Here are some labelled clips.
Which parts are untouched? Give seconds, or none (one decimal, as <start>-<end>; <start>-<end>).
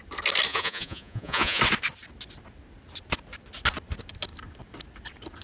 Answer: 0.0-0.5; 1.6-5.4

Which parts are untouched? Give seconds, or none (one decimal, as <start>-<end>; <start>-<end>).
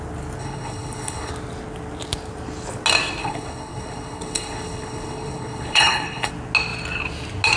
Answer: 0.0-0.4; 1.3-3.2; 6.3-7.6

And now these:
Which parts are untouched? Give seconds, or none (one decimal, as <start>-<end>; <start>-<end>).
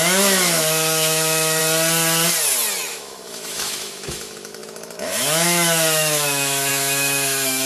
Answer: 1.6-2.9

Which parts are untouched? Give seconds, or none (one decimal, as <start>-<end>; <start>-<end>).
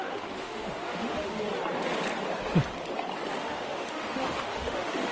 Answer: 1.5-3.4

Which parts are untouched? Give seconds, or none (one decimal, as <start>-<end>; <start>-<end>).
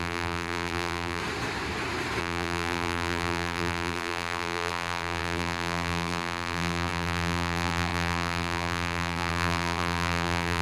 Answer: 1.2-2.2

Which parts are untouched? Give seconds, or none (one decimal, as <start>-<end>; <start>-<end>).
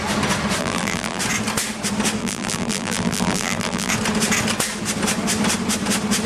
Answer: 0.0-0.6; 1.2-2.2; 3.9-6.3